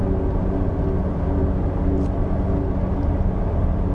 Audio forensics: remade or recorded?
recorded